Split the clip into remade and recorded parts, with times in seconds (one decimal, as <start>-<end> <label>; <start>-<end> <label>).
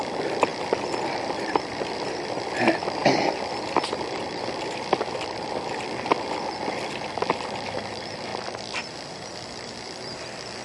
0.0-10.6 recorded